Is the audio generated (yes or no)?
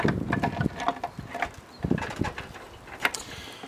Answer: no